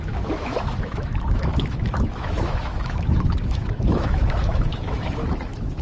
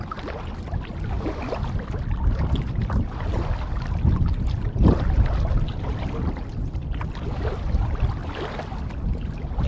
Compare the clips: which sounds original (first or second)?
second